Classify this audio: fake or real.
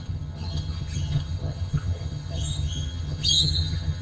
fake